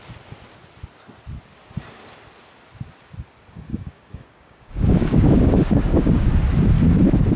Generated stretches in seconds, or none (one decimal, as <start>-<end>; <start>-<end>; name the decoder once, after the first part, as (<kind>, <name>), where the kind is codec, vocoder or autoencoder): 3.7-6.3 (codec, DAC)